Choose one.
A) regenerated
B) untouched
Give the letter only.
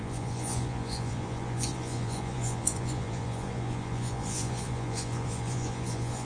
A